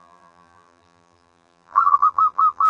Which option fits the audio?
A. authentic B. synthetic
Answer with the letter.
B